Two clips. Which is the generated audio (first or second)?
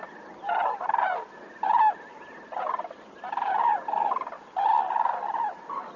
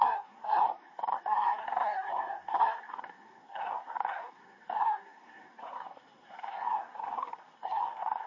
second